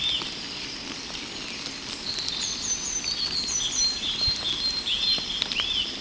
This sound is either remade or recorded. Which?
recorded